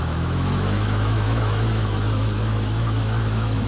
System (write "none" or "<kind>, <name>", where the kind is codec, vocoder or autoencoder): autoencoder, DAC-VAE